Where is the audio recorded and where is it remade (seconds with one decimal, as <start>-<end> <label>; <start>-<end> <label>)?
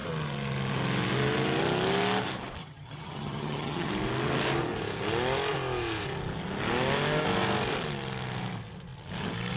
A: 0.0-2.6 recorded; 2.6-3.9 remade; 3.9-9.6 recorded